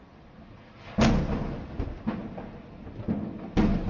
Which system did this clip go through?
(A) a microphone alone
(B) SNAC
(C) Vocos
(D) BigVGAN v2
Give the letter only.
A